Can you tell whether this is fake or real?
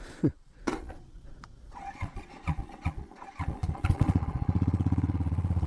fake